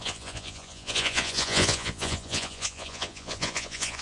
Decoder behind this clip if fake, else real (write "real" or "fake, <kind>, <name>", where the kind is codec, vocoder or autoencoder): fake, vocoder, Vocos